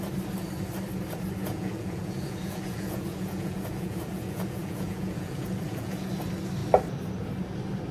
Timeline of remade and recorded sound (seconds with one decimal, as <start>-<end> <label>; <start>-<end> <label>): 0.0-1.4 recorded; 1.4-6.1 remade; 6.1-7.9 recorded